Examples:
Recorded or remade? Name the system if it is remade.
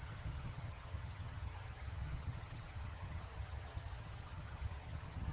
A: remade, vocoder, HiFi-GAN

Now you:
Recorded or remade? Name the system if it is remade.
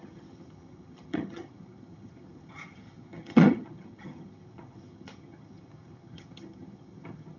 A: remade, vocoder, HiFi-GAN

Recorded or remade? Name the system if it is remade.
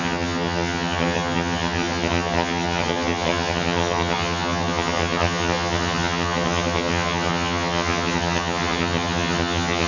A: remade, vocoder, HiFi-GAN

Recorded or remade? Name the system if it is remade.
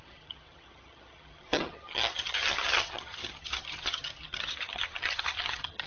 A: remade, vocoder, HiFi-GAN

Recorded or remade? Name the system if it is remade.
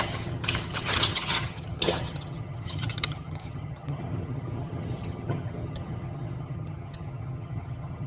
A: remade, vocoder, HiFi-GAN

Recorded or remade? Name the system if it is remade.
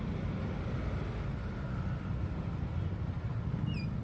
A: recorded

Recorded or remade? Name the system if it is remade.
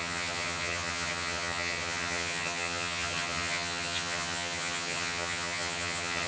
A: remade, vocoder, HiFi-GAN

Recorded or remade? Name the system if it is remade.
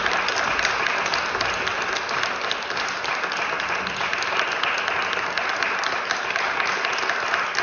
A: recorded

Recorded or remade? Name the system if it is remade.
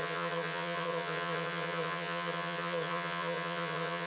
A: remade, vocoder, HiFi-GAN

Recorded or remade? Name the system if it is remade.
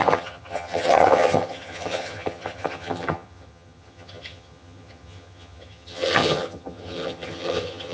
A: remade, vocoder, HiFi-GAN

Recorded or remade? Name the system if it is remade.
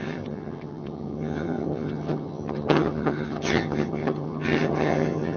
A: remade, vocoder, HiFi-GAN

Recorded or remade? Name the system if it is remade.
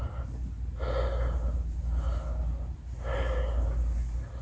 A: recorded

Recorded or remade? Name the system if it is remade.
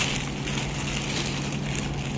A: recorded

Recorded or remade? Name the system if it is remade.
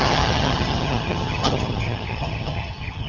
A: remade, vocoder, HiFi-GAN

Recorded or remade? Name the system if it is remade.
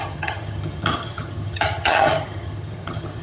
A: remade, vocoder, HiFi-GAN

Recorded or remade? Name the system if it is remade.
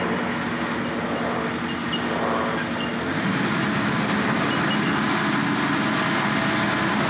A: recorded